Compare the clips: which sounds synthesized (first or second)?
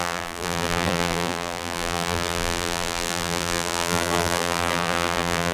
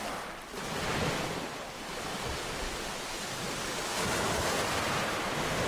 first